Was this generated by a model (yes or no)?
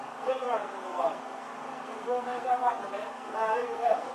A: yes